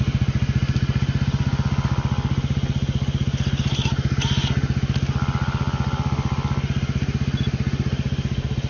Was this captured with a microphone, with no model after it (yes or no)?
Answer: yes